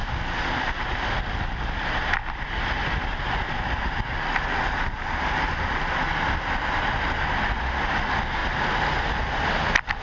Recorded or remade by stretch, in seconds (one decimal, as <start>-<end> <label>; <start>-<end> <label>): 0.0-10.0 recorded